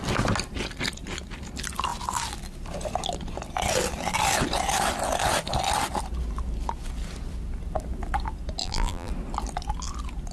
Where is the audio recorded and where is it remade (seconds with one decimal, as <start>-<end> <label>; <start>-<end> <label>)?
0.0-8.6 recorded; 8.6-9.1 remade; 9.1-10.3 recorded